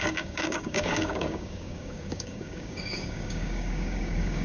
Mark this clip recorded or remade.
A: remade